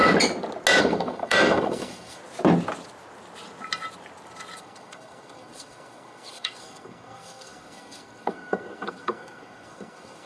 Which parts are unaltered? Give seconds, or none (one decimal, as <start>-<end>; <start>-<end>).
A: 0.0-0.8; 2.2-4.6